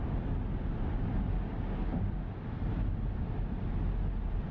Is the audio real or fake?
real